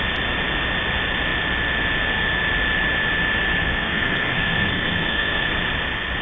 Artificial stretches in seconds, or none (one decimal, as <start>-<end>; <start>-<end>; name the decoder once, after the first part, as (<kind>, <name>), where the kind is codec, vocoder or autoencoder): 3.6-5.5 (codec, SNAC)